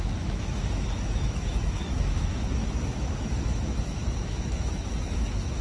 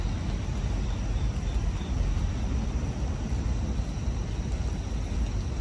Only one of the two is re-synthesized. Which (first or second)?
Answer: first